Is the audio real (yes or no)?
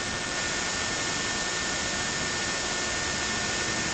yes